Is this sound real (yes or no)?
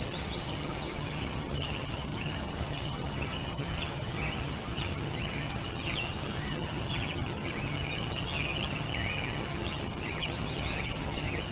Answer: no